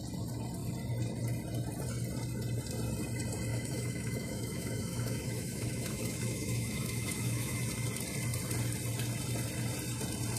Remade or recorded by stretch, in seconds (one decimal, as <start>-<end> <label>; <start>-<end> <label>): 0.0-3.5 recorded; 3.5-7.6 remade; 7.6-10.4 recorded